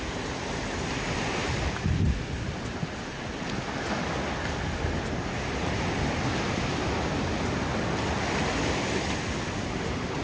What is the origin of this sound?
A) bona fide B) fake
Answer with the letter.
A